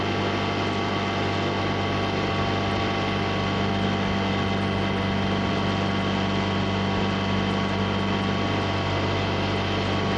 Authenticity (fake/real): real